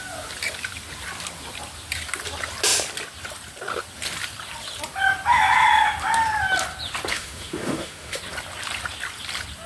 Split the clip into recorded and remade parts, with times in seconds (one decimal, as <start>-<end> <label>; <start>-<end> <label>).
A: 0.0-7.1 recorded; 7.1-8.2 remade; 8.2-9.7 recorded